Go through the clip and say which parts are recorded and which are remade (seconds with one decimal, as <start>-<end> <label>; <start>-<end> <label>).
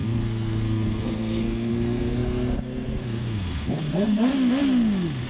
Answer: 0.0-4.3 remade; 4.3-5.3 recorded